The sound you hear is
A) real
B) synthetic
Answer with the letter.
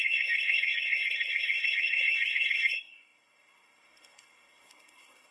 B